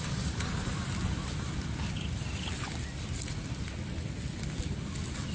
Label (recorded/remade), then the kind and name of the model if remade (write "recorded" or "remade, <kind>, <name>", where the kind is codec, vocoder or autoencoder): recorded